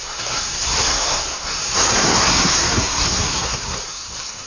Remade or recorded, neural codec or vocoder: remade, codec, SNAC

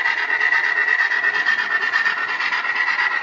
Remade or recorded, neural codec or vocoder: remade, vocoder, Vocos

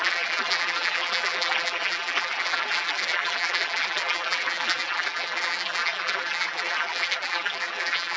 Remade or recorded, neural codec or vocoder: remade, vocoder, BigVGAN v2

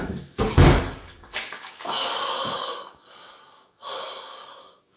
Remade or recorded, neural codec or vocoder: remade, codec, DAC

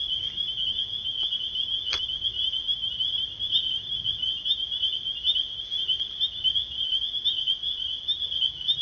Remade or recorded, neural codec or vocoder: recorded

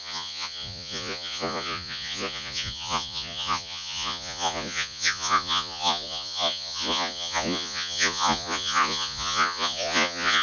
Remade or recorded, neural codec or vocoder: remade, vocoder, Vocos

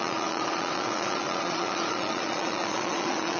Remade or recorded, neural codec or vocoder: remade, vocoder, Vocos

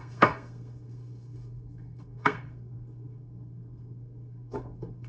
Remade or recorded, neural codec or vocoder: remade, codec, SNAC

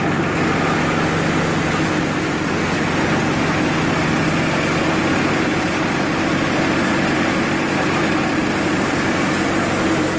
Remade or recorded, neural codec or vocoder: recorded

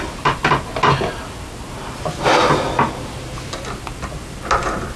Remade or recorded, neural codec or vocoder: recorded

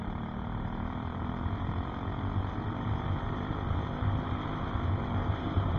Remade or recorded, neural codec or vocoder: remade, vocoder, BigVGAN v2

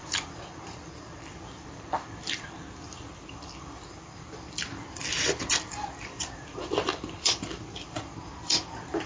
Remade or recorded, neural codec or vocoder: remade, vocoder, BigVGAN v2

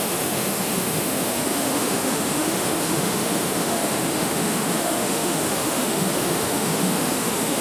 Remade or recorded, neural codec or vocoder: remade, autoencoder, DAC-VAE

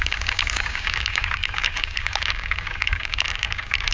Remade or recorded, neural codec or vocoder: remade, codec, DAC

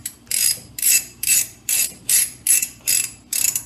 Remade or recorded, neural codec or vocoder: remade, vocoder, BigVGAN v2